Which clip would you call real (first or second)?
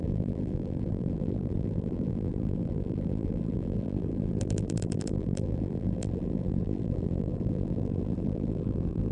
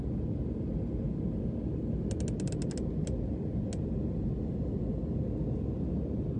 second